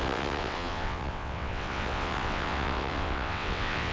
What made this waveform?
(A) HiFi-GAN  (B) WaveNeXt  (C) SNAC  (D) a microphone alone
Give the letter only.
B